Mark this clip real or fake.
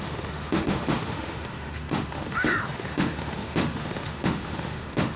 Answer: fake